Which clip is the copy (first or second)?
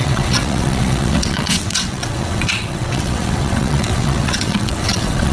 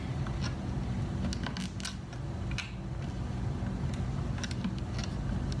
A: first